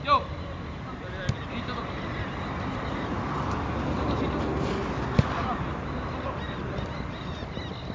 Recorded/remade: recorded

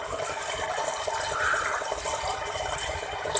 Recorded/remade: recorded